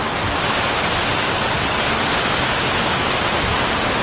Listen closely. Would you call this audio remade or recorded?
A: recorded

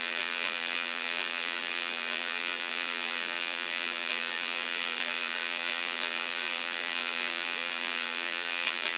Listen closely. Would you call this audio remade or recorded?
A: remade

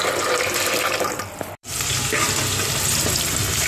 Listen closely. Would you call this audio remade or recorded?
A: remade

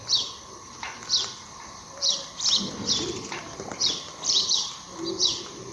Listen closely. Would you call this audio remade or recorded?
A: remade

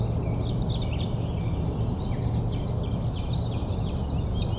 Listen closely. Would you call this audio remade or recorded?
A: recorded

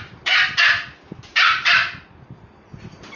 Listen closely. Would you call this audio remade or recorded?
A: remade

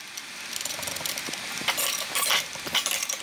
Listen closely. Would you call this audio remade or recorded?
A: recorded